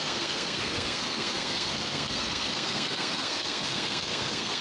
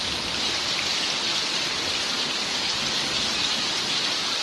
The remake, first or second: first